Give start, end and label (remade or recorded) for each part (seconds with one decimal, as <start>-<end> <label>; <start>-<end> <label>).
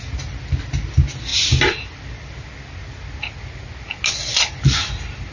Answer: 0.0-5.3 recorded